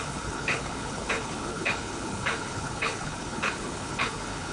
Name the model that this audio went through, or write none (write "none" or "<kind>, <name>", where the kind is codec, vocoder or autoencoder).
codec, HILCodec